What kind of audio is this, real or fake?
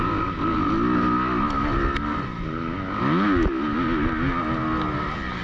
real